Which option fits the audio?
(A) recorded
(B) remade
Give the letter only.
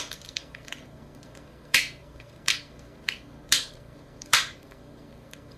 B